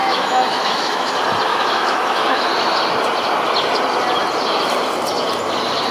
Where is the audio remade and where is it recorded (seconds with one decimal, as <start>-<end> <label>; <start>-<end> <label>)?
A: 0.0-1.1 remade; 1.1-1.5 recorded; 1.5-2.5 remade; 2.5-5.9 recorded